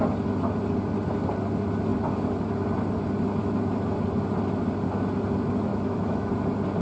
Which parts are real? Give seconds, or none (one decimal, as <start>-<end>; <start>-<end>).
0.0-5.7; 6.3-6.8